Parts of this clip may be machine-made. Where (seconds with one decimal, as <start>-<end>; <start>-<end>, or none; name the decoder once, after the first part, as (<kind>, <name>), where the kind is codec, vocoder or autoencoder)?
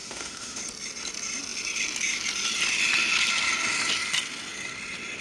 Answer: 0.0-0.6 (autoencoder, DAC-VAE)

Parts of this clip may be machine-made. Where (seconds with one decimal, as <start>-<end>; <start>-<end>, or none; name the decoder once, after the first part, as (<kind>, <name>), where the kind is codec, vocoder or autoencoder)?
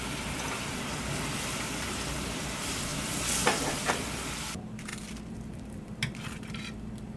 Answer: 0.0-2.9 (vocoder, BigVGAN v2); 3.9-7.2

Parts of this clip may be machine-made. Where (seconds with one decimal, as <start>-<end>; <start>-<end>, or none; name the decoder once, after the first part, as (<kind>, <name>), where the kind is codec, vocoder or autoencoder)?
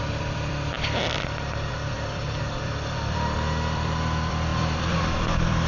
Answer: 0.0-5.7 (vocoder, BigVGAN v2)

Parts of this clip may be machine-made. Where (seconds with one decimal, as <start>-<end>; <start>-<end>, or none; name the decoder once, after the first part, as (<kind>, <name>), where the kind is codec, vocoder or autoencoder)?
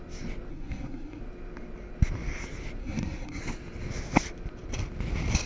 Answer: 0.5-1.2 (codec, SNAC); 2.8-3.4